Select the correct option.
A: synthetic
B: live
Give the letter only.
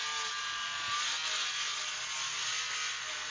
B